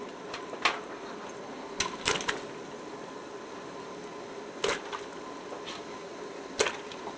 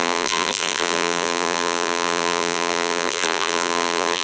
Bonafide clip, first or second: first